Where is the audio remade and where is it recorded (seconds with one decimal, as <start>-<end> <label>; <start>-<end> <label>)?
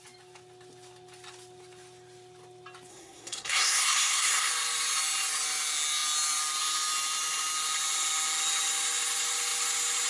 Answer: 0.0-2.9 recorded; 2.9-4.5 remade; 4.5-10.1 recorded